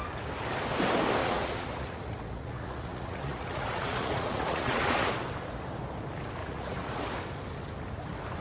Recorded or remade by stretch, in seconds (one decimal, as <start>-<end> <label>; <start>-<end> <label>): 0.0-1.2 recorded; 1.2-5.1 remade; 5.1-6.4 recorded; 6.4-7.0 remade; 7.0-8.4 recorded